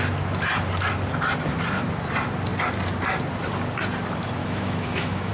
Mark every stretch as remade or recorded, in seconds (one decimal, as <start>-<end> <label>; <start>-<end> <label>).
0.0-4.4 recorded; 4.4-5.3 remade